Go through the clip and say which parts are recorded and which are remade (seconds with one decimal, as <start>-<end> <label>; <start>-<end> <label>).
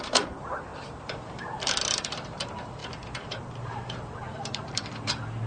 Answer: 0.0-5.5 remade